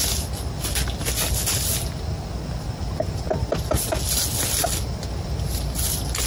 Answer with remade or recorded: recorded